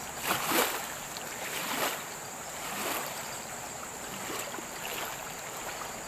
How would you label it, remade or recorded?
remade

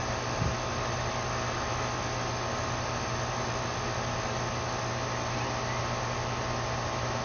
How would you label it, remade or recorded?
recorded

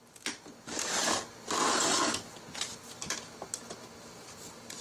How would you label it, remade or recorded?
recorded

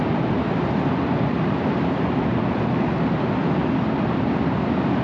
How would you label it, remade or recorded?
remade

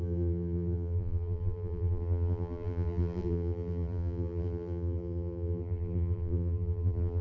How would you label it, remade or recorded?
remade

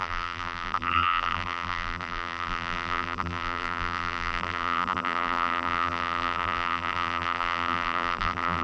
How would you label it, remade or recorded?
remade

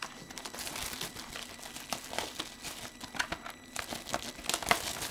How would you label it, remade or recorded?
recorded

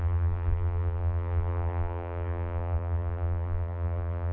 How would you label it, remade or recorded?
remade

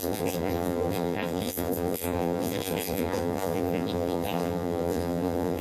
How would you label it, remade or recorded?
remade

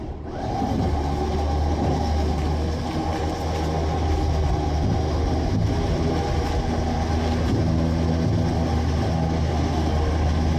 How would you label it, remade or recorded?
recorded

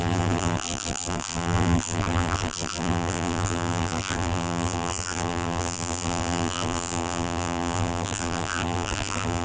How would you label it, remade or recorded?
remade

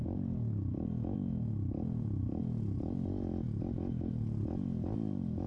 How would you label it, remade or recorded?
recorded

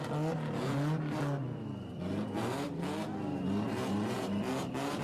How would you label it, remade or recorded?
recorded